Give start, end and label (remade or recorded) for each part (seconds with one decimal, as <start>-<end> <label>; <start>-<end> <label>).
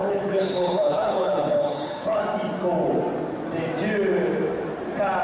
0.0-2.2 remade; 2.2-5.2 recorded